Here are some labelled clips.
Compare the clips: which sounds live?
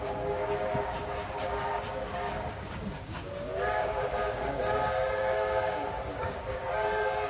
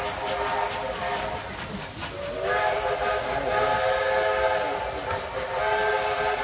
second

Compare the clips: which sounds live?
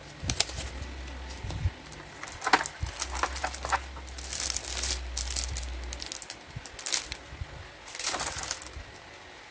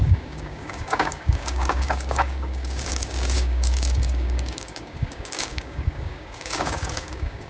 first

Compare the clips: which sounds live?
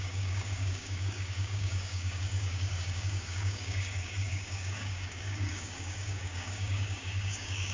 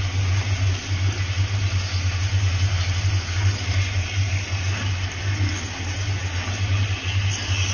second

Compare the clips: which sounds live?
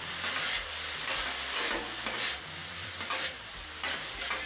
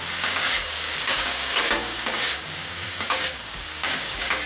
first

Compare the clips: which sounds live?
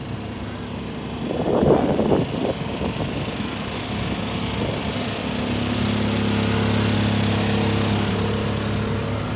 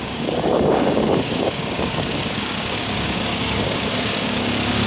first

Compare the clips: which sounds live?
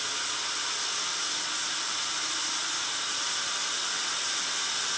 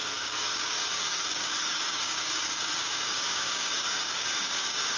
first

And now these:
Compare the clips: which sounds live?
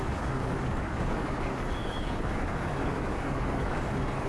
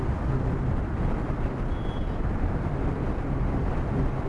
second